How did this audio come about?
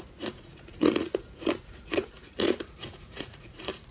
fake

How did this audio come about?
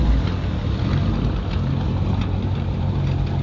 real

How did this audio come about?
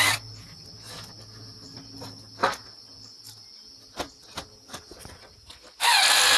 real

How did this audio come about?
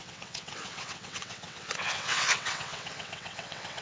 fake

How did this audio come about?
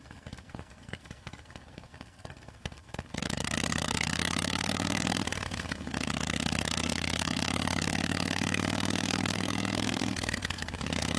fake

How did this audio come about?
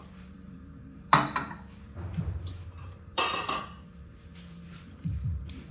fake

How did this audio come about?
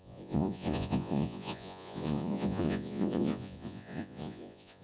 fake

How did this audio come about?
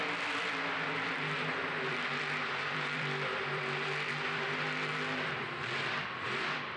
fake